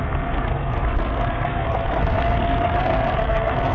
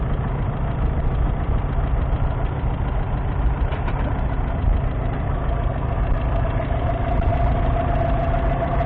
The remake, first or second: first